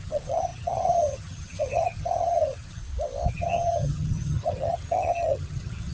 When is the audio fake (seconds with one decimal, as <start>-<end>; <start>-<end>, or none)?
0.0-2.8; 3.3-5.9